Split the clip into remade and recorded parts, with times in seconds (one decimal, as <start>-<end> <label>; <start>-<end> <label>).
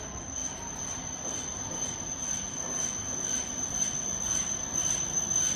0.0-5.6 recorded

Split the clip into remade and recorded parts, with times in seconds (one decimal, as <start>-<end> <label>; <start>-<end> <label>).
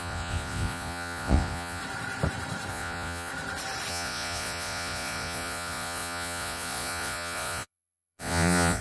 0.0-1.8 remade; 1.8-2.7 recorded; 2.7-3.3 remade; 3.3-3.9 recorded; 3.9-8.8 remade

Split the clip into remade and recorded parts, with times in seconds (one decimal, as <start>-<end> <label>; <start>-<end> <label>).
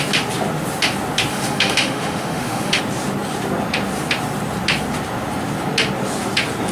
0.0-1.3 recorded; 1.3-2.8 remade; 2.8-6.7 recorded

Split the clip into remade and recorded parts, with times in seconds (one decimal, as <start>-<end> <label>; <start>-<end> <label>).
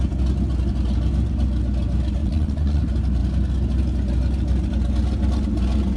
0.0-2.2 recorded; 2.2-2.8 remade; 2.8-6.0 recorded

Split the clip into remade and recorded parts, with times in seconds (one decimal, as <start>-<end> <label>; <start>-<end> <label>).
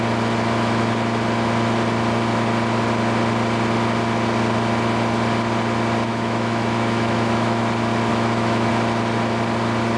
0.0-6.1 recorded; 6.1-7.6 remade; 7.6-8.1 recorded; 8.1-8.7 remade; 8.7-10.0 recorded